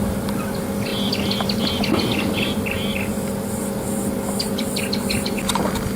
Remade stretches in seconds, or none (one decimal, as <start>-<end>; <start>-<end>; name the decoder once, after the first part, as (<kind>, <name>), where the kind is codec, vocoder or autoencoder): 0.0-0.9 (vocoder, BigVGAN v2); 2.3-3.1; 4.4-6.0